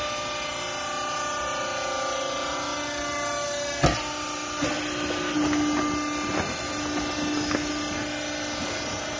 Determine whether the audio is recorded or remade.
recorded